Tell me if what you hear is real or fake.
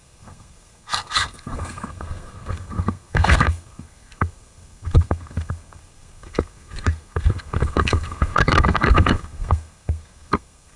fake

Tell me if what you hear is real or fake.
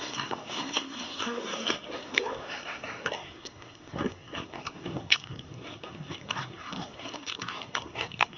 fake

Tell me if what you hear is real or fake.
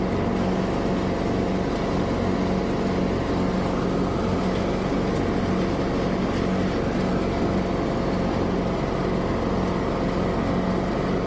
real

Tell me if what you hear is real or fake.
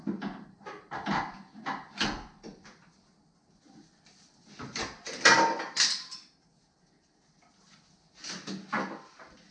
real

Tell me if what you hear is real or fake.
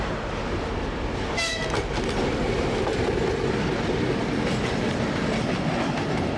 real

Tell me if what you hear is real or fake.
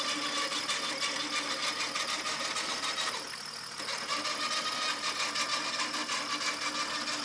real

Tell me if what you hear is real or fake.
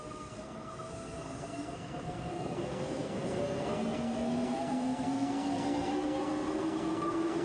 fake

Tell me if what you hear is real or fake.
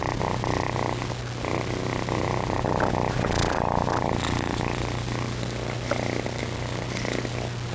real